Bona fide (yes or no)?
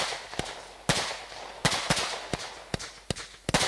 yes